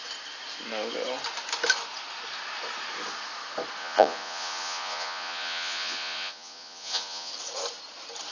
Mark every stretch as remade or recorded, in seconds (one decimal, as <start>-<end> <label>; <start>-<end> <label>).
0.0-3.8 recorded; 3.8-7.3 remade; 7.3-8.3 recorded